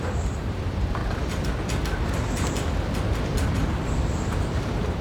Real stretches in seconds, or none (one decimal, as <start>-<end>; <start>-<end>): 1.0-4.0